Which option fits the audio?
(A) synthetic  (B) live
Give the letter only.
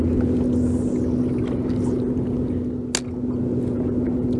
B